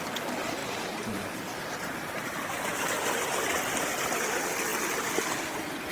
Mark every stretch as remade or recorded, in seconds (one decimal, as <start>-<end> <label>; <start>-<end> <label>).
0.0-0.6 recorded; 0.6-2.9 remade; 2.9-5.9 recorded